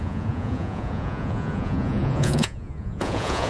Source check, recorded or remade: remade